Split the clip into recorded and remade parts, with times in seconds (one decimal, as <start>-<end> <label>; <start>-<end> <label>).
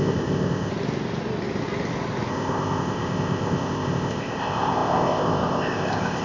0.0-0.7 remade; 0.7-2.3 recorded; 2.3-6.2 remade